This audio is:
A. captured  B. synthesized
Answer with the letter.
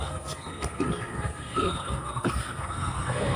B